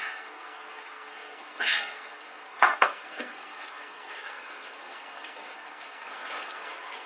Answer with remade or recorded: remade